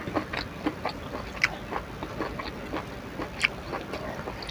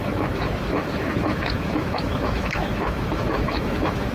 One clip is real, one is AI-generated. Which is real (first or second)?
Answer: first